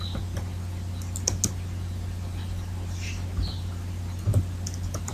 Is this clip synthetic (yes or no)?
no